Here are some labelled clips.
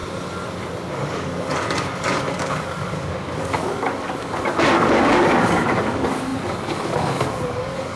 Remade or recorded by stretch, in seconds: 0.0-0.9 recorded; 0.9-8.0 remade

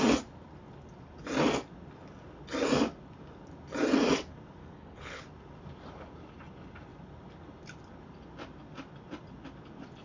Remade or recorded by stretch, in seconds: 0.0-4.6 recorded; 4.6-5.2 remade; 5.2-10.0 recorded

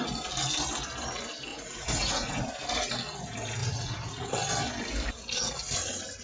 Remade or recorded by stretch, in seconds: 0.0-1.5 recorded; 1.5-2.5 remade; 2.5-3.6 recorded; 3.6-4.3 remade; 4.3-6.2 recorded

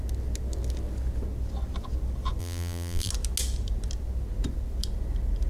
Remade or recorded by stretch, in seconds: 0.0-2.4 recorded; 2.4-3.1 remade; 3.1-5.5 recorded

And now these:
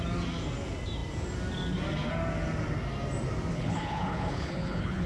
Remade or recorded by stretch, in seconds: 0.0-3.5 recorded; 3.5-5.1 remade

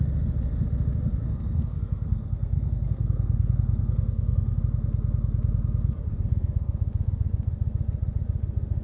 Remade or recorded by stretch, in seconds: 0.0-1.2 recorded; 1.2-4.6 remade; 4.6-6.1 recorded; 6.1-6.8 remade; 6.8-8.8 recorded

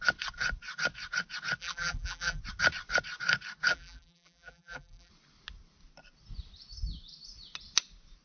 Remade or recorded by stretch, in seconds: 0.0-1.6 recorded; 1.6-2.4 remade; 2.4-3.7 recorded; 3.7-5.1 remade; 5.1-8.2 recorded

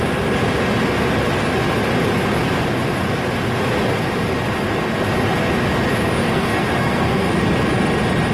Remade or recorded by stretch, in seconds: 0.0-6.2 recorded; 6.2-7.3 remade; 7.3-8.3 recorded